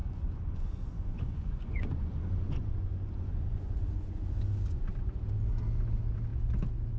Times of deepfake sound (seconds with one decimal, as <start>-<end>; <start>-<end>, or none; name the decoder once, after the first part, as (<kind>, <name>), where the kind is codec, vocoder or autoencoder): 0.0-4.2 (vocoder, Vocos)